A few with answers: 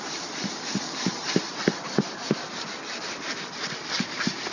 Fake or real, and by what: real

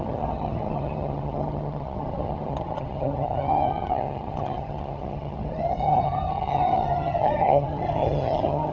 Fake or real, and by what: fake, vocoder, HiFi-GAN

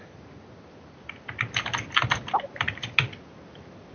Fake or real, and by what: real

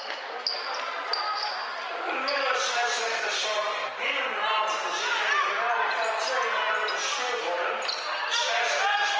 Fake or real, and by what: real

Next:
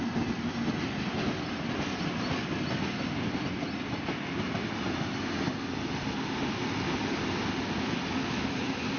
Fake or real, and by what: real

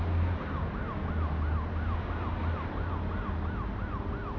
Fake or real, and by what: real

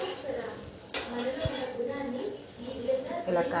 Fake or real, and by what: real